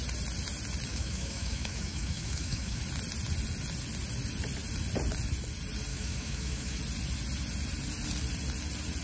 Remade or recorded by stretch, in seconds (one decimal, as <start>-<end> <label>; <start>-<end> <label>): 0.0-0.9 recorded; 0.9-2.8 remade; 2.8-5.9 recorded; 5.9-6.8 remade; 6.8-9.0 recorded